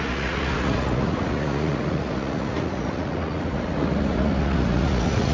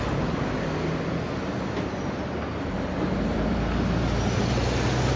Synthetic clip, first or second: first